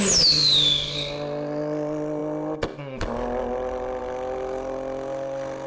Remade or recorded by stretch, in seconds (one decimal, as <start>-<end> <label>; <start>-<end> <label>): 0.0-5.7 recorded

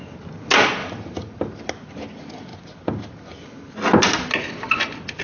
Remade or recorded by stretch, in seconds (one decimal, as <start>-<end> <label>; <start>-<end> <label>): 0.0-0.8 recorded; 0.8-1.6 remade; 1.6-5.2 recorded

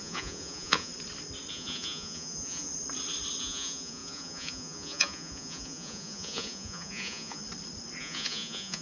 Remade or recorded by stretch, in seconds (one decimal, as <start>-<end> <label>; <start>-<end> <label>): 0.0-0.9 remade; 0.9-1.5 recorded; 1.5-2.7 remade; 2.7-3.4 recorded; 3.4-7.4 remade; 7.4-8.0 recorded; 8.0-8.8 remade